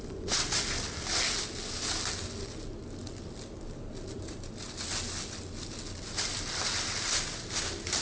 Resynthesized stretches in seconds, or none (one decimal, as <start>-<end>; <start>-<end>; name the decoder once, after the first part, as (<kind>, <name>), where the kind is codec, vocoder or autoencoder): none

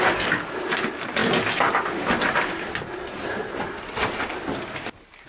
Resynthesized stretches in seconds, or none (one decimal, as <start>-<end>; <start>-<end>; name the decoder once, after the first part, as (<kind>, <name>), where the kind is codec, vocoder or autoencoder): 1.2-3.7 (vocoder, BigVGAN v2)